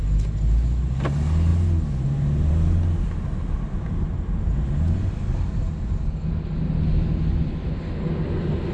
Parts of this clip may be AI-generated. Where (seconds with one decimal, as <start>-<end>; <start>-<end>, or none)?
none